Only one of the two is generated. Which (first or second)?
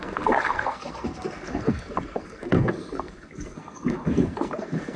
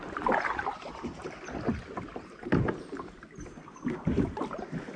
first